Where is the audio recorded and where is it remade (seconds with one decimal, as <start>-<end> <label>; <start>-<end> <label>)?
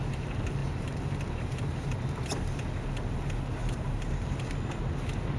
0.0-0.6 recorded; 0.6-2.0 remade; 2.0-3.6 recorded; 3.6-4.5 remade; 4.5-5.4 recorded